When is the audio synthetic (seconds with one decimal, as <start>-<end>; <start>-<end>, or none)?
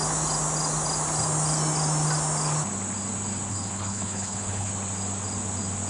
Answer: 3.5-4.7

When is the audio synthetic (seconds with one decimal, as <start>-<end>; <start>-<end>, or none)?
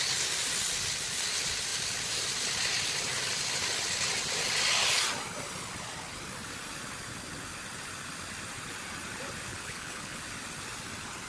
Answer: 9.5-10.2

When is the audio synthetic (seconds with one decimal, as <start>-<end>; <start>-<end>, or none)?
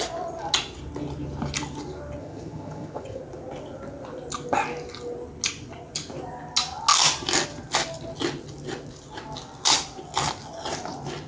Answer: 2.2-3.2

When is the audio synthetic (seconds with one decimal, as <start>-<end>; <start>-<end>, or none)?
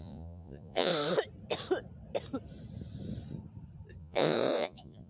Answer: 0.0-0.9; 4.0-5.1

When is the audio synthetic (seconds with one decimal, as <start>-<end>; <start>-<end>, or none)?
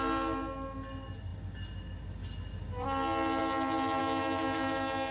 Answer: 4.0-5.1